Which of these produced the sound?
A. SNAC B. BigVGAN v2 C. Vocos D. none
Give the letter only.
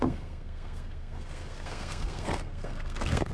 A